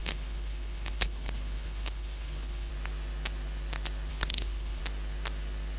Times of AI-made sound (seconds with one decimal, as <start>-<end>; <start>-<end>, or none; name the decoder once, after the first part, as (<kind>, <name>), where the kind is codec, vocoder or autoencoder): 0.0-2.7 (codec, HILCodec); 4.1-4.8